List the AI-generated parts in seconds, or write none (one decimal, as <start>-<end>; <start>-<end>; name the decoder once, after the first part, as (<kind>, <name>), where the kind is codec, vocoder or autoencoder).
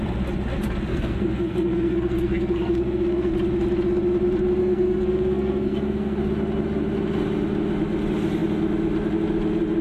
0.9-3.3 (codec, SNAC); 4.6-6.2